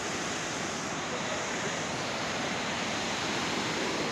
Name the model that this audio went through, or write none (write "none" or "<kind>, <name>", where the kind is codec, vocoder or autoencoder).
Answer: vocoder, BigVGAN v2